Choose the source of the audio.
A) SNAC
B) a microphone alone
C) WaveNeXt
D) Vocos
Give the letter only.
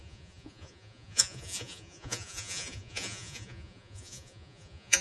D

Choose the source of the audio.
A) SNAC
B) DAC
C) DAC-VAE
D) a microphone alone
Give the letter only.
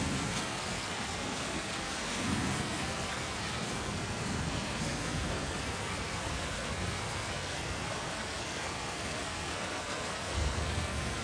A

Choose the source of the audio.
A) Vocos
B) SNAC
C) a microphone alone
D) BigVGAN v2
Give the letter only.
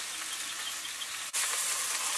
C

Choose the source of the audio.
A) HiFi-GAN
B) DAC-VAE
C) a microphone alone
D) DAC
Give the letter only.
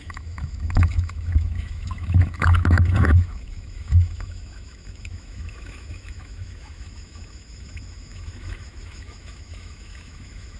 B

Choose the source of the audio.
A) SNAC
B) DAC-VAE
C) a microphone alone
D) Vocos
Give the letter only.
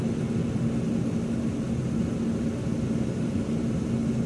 C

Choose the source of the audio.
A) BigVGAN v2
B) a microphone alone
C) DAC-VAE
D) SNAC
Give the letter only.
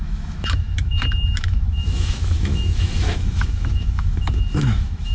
C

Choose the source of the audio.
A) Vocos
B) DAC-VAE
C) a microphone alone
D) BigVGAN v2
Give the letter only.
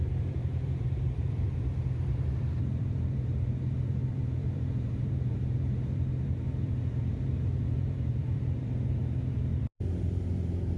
D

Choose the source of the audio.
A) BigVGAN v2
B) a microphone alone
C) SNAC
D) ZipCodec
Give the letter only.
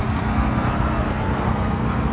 C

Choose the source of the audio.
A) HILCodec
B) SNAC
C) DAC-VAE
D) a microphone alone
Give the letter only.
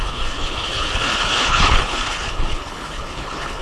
A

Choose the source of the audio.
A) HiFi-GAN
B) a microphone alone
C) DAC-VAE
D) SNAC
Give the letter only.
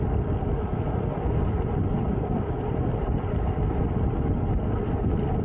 B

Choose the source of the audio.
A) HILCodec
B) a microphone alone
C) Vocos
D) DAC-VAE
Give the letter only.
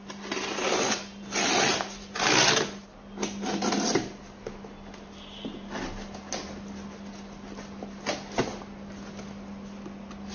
B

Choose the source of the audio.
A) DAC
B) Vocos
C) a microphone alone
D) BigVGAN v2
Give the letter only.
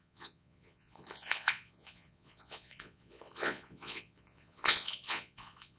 B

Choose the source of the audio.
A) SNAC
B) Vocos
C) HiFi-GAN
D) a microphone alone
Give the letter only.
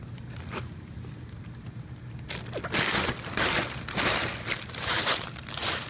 D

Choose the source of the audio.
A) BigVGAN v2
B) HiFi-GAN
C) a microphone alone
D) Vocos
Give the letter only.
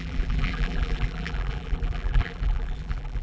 A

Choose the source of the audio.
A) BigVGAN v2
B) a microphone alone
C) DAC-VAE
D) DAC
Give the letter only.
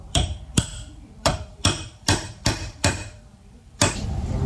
A